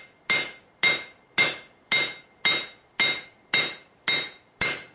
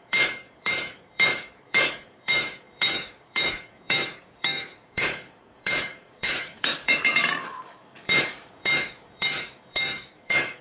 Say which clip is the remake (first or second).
second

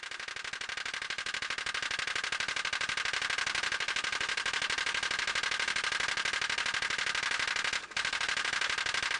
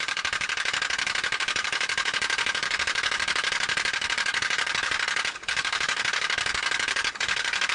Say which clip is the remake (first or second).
second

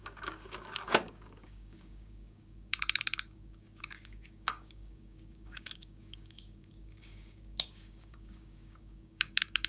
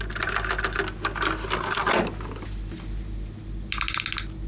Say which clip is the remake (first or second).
first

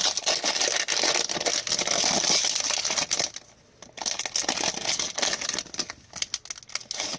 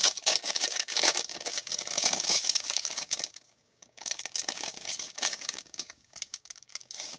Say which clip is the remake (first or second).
second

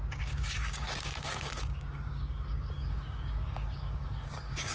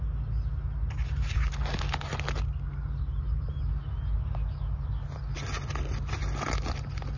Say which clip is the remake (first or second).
first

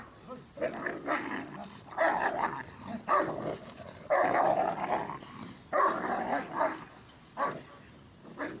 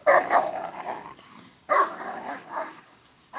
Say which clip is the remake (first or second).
second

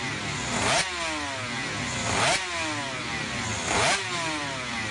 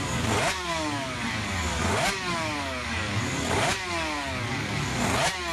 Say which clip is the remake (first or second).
second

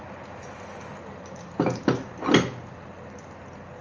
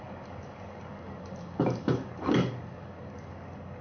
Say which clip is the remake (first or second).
second